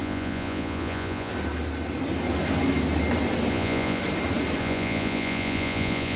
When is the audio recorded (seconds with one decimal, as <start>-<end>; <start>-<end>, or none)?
1.3-3.5; 4.0-4.6